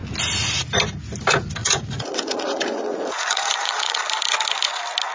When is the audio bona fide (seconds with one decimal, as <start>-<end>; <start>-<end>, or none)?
0.0-1.6; 4.0-5.1